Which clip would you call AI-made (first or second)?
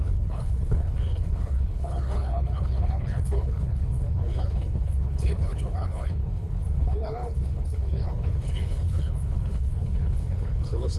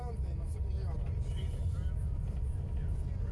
first